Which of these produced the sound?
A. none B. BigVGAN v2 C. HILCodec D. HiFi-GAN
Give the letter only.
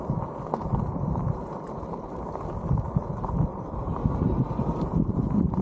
B